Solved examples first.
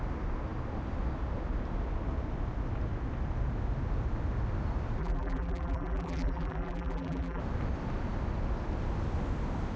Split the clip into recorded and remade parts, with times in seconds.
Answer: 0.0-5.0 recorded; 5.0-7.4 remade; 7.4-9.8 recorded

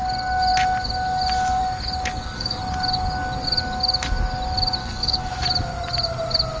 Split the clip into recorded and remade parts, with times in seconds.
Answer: 0.0-2.1 recorded; 2.1-2.6 remade; 2.6-4.8 recorded; 4.8-5.4 remade; 5.4-6.6 recorded

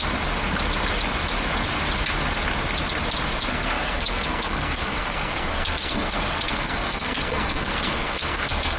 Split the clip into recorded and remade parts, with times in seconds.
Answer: 0.0-3.5 recorded; 3.5-8.8 remade

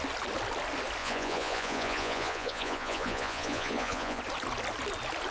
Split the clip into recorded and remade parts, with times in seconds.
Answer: 0.0-1.0 recorded; 1.0-4.2 remade; 4.2-5.3 recorded

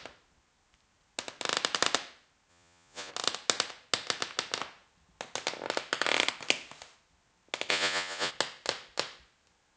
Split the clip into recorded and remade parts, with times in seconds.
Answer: 0.0-2.5 recorded; 2.5-3.1 remade; 3.1-7.7 recorded; 7.7-8.3 remade; 8.3-9.8 recorded

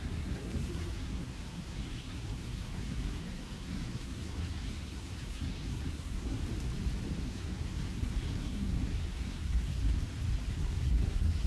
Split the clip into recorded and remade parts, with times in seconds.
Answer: 0.0-6.4 remade; 6.4-7.2 recorded; 7.2-9.8 remade; 9.8-10.5 recorded; 10.5-11.5 remade